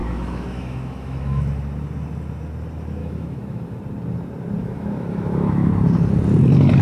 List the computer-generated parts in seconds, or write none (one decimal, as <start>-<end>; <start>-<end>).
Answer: 0.0-1.4; 3.0-3.8; 4.6-5.7